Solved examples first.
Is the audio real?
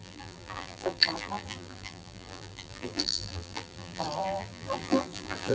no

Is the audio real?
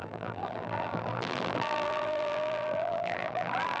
no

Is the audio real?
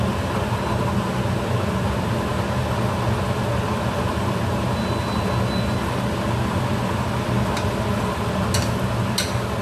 yes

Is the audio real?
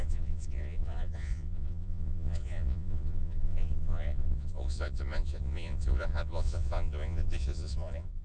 no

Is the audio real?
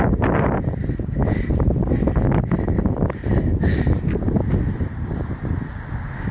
yes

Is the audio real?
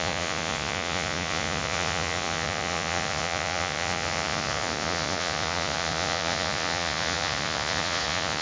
no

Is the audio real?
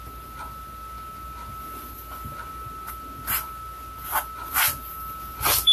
yes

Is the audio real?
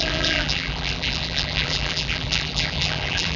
no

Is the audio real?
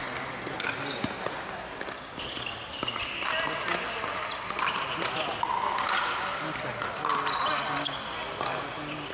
yes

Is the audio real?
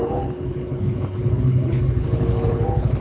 no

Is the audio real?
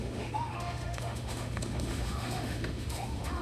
no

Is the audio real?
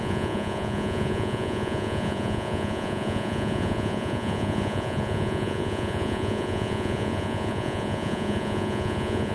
no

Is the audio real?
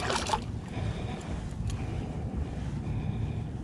yes